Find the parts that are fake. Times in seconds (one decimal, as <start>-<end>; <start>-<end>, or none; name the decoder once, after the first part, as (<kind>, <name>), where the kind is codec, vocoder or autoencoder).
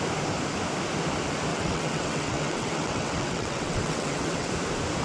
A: 1.5-4.5 (vocoder, WaveNeXt)